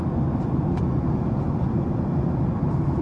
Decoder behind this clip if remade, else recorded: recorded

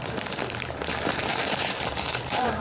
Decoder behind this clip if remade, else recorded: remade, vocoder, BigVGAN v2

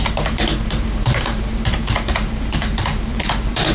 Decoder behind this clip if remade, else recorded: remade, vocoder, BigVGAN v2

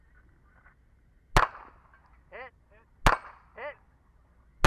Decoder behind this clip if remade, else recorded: recorded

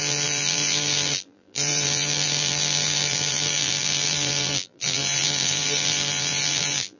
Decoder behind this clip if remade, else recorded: remade, vocoder, BigVGAN v2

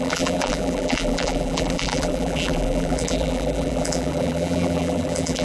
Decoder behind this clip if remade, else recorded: remade, vocoder, BigVGAN v2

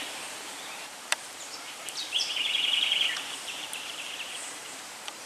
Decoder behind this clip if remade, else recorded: remade, vocoder, BigVGAN v2